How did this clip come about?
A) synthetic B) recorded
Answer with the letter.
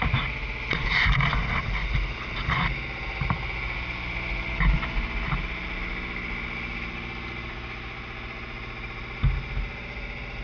B